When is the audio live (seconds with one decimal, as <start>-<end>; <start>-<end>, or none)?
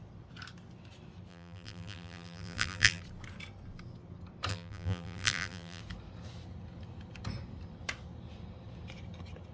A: 0.0-1.3; 3.0-4.5; 5.8-9.5